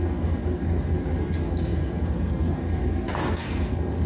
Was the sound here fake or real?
fake